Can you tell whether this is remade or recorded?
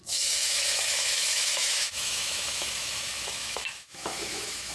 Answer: remade